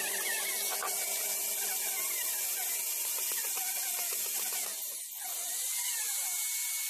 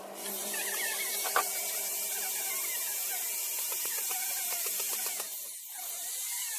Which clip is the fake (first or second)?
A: second